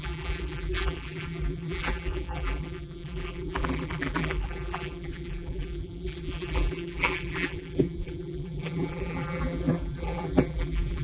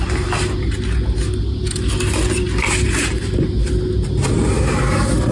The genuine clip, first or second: second